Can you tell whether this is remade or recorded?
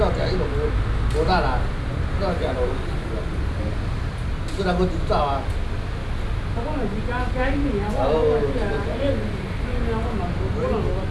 recorded